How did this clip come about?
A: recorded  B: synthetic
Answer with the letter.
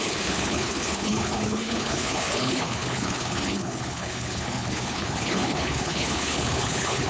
B